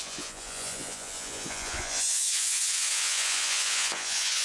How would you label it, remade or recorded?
remade